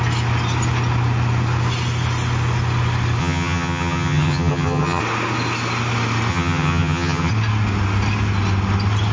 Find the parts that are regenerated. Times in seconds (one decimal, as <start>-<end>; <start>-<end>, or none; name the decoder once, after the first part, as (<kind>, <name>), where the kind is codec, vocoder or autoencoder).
3.2-5.0 (vocoder, HiFi-GAN); 6.3-7.3